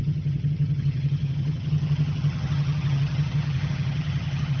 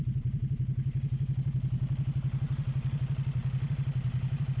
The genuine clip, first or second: second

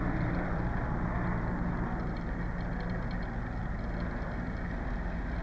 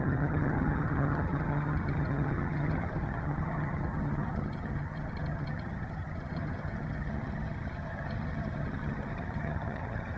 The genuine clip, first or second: first